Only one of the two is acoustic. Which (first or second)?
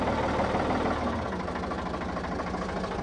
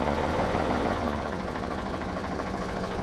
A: first